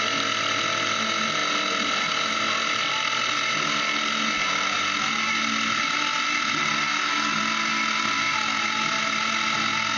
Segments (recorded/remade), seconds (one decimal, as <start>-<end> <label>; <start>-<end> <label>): 0.0-6.9 recorded; 6.9-7.4 remade; 7.4-10.0 recorded